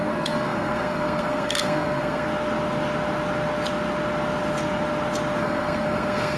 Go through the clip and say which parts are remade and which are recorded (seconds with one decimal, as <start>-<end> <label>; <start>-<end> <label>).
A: 0.0-2.3 remade; 2.3-5.4 recorded; 5.4-6.4 remade